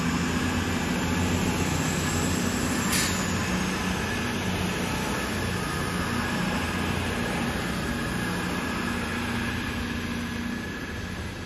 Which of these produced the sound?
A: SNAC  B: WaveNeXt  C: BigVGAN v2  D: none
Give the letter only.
D